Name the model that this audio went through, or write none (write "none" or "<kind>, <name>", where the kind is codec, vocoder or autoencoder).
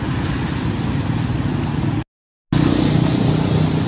none